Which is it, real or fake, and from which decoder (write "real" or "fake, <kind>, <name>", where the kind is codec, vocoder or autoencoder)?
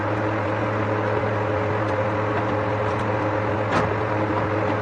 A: real